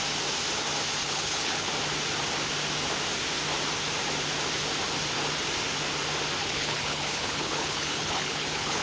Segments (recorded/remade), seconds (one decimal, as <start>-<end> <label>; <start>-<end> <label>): 0.0-1.0 recorded; 1.0-1.7 remade; 1.7-6.4 recorded; 6.4-8.8 remade